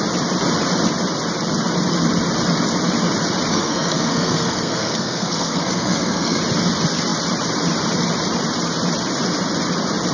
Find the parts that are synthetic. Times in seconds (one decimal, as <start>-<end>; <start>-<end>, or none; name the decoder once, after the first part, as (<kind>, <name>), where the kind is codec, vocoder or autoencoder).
3.5-6.4 (codec, SNAC)